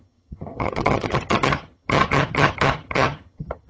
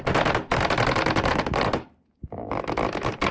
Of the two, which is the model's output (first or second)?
first